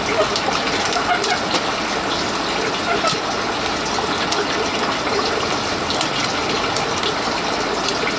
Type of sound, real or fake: real